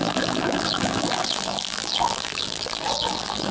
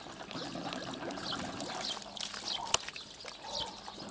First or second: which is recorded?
second